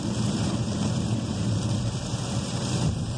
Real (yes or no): yes